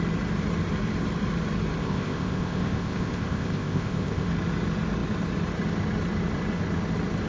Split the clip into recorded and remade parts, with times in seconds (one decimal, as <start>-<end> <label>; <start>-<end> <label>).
0.0-1.8 recorded; 1.8-4.3 remade; 4.3-7.3 recorded